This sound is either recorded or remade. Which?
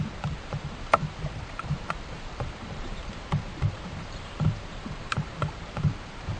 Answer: remade